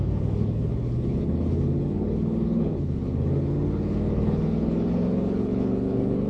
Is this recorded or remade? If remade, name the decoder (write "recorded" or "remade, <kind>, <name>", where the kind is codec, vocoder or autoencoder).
remade, codec, HILCodec